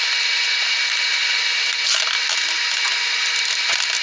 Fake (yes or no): no